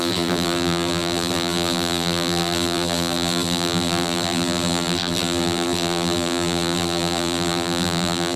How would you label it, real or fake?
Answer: fake